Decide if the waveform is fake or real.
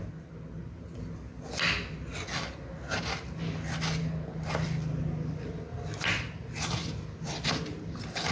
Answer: real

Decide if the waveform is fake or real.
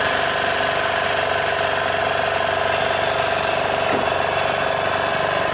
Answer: real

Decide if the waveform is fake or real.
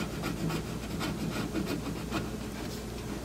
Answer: real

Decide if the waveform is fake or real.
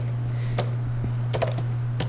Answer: real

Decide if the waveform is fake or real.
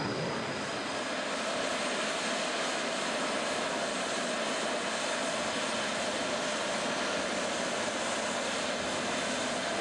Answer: real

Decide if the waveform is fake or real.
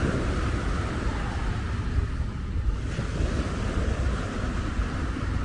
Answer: fake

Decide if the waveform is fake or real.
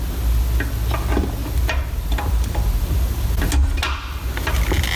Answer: real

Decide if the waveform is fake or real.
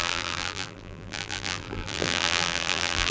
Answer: fake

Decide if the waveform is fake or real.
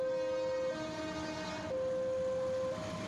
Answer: real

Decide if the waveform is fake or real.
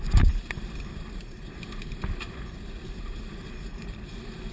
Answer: fake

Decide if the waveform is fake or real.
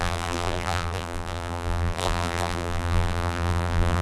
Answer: fake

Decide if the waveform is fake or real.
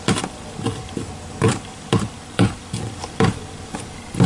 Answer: fake